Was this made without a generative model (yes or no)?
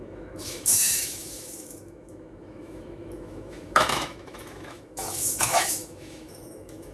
no